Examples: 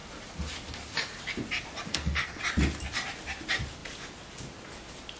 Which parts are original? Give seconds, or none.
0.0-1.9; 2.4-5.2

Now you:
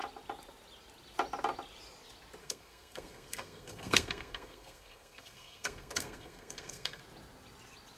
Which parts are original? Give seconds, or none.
0.0-2.4; 7.0-8.0